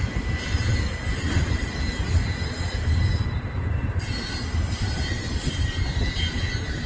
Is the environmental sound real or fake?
real